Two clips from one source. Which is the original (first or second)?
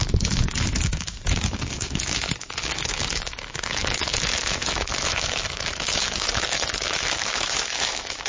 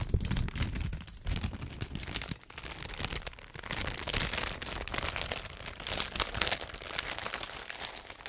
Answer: second